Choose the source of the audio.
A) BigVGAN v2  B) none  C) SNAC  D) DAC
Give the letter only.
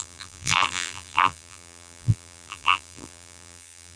A